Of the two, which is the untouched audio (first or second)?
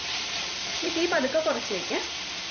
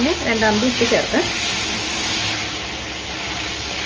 second